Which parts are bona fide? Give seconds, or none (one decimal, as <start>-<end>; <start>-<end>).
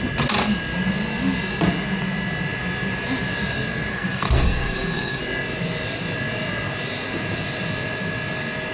0.0-3.9; 5.2-8.7